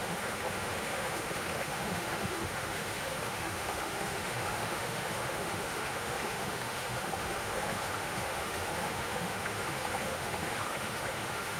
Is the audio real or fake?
fake